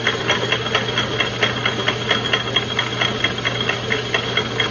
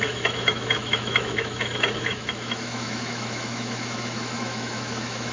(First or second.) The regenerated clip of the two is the second